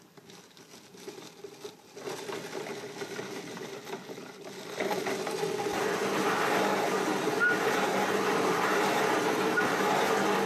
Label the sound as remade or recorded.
recorded